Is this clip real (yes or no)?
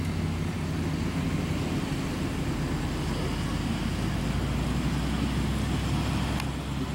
yes